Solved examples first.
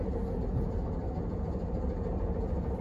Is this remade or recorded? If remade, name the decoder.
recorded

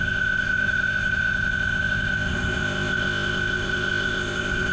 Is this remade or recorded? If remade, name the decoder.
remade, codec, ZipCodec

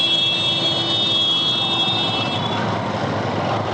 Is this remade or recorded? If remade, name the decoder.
recorded